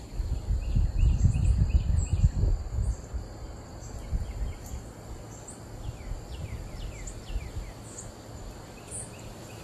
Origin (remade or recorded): recorded